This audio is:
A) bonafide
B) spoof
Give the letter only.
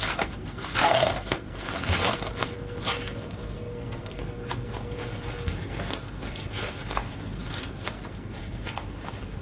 B